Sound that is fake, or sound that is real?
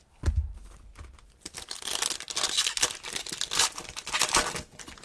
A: real